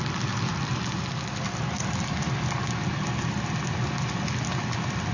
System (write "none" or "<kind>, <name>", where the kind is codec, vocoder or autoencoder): none